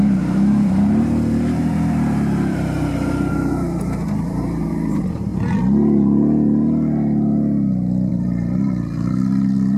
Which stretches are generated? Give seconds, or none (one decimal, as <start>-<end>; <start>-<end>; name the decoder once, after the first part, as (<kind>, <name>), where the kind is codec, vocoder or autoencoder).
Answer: 0.0-5.3 (vocoder, BigVGAN v2); 8.1-9.8